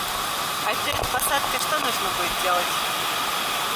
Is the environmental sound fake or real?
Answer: real